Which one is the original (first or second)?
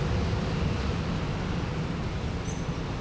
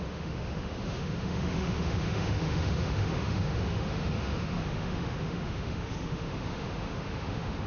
first